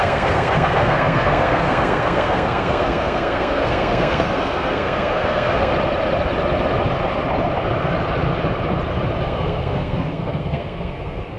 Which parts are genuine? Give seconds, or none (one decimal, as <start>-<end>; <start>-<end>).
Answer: 5.7-9.2